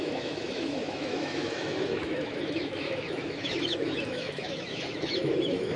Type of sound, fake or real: fake